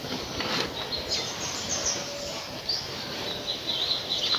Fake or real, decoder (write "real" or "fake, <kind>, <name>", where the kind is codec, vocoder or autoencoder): real